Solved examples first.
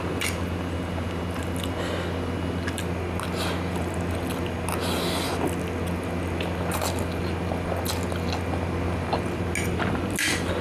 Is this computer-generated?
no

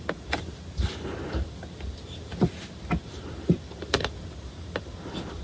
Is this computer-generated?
no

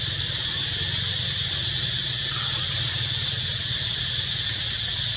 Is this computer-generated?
no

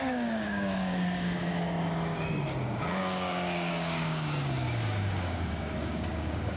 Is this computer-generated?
yes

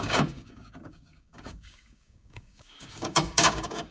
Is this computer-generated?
yes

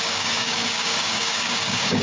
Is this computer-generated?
yes